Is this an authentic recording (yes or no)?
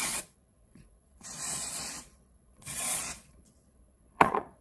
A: no